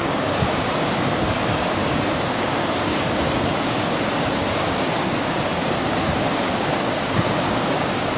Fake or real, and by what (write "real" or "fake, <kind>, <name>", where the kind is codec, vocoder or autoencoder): fake, codec, DAC